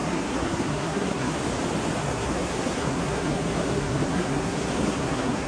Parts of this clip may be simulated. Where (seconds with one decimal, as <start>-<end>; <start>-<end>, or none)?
0.0-1.4; 2.0-5.5

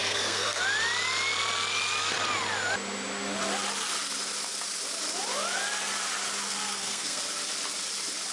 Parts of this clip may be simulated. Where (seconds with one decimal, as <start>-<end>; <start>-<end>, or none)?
0.0-0.6; 6.5-7.2

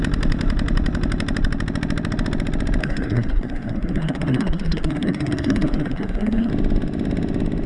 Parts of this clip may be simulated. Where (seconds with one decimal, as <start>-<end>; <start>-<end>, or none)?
2.8-6.5

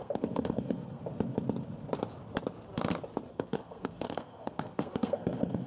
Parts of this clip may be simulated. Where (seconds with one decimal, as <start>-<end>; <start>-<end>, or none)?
0.0-1.0; 3.3-5.7

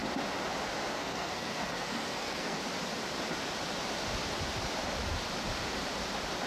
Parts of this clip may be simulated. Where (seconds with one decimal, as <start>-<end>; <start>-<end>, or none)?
0.9-2.6

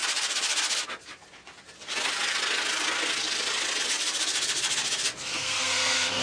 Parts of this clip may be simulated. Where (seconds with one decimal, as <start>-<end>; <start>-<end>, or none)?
5.4-6.2

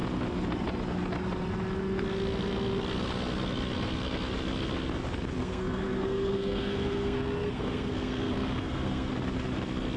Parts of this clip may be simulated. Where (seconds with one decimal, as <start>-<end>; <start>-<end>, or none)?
5.4-9.1

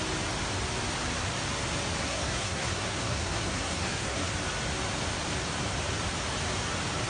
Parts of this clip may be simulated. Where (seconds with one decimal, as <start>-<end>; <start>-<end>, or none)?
2.0-4.3